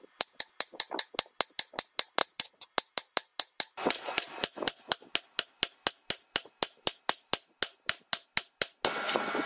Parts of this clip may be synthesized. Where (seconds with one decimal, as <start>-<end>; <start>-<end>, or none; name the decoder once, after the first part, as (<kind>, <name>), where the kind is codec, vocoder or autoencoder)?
2.2-2.7 (vocoder, WaveNeXt)